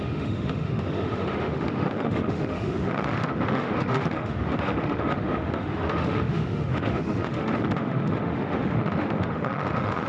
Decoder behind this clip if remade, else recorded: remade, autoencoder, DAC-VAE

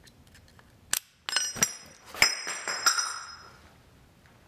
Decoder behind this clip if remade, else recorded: recorded